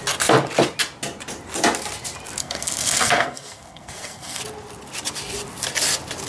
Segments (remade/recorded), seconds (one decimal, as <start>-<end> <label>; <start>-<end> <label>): 0.0-2.4 recorded; 2.4-4.4 remade; 4.4-6.3 recorded